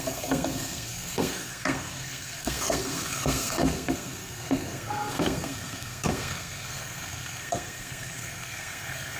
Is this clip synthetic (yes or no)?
yes